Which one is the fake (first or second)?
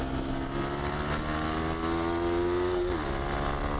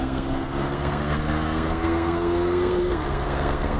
second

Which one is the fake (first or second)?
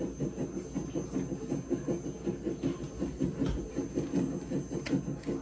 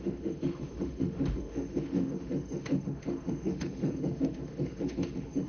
second